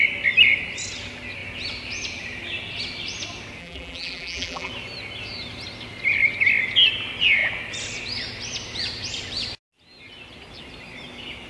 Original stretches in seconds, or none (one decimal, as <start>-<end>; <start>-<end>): 0.0-3.6; 4.7-11.5

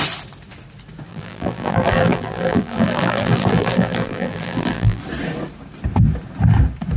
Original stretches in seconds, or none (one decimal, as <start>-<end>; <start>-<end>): 0.0-1.1; 5.0-7.0

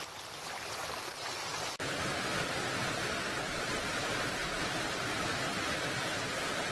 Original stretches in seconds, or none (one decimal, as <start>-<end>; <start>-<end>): 0.0-4.4; 5.4-6.7

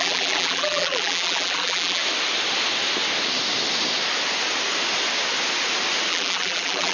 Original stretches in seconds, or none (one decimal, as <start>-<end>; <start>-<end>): 2.0-6.1